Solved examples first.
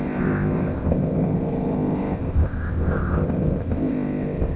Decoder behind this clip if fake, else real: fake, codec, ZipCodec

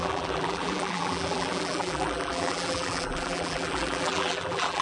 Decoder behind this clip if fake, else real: fake, vocoder, BigVGAN v2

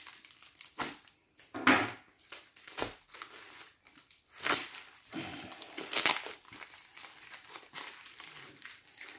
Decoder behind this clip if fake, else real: fake, vocoder, BigVGAN v2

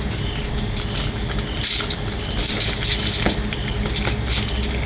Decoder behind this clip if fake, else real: real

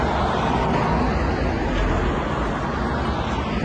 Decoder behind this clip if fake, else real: real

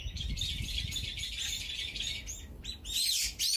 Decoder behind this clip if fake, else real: real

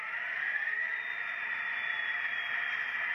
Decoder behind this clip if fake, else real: fake, vocoder, BigVGAN v2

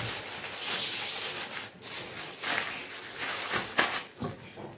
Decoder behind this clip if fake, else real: real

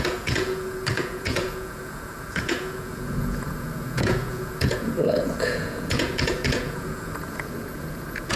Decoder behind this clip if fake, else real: fake, vocoder, Vocos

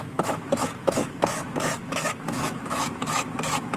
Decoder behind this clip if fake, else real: fake, autoencoder, DAC-VAE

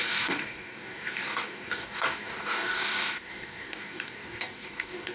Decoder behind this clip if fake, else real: fake, codec, DAC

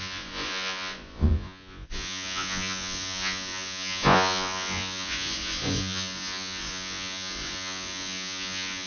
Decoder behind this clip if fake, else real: fake, vocoder, Vocos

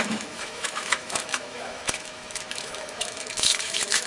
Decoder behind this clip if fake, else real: fake, autoencoder, DAC-VAE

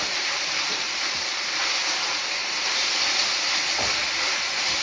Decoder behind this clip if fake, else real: fake, vocoder, BigVGAN v2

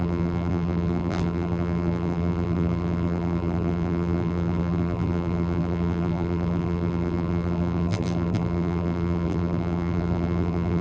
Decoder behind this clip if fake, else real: fake, vocoder, BigVGAN v2